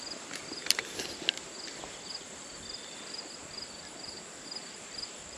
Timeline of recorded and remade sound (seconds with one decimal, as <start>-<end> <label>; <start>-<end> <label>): 0.0-0.6 recorded; 0.6-3.8 remade; 3.8-5.4 recorded